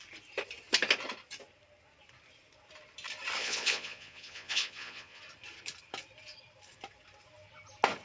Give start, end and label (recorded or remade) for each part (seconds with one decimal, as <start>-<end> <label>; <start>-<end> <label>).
0.0-3.4 recorded; 3.4-5.2 remade; 5.2-8.0 recorded